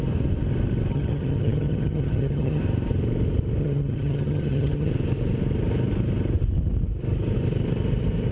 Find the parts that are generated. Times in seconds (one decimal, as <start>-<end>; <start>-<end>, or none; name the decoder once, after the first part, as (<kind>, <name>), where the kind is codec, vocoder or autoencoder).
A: 0.9-2.6 (vocoder, HiFi-GAN); 3.6-4.9